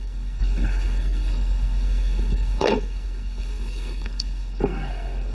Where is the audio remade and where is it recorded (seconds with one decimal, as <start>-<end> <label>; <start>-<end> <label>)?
0.0-5.3 remade